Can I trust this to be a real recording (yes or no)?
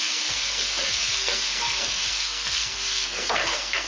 no